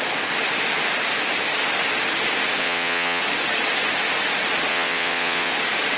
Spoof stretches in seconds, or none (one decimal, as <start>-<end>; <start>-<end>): 2.6-3.2; 4.7-5.5